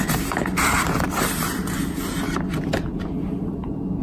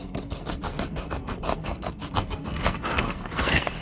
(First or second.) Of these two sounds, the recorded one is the first